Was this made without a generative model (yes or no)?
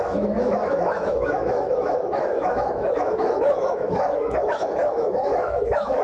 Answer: no